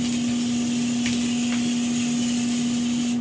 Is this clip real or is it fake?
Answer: real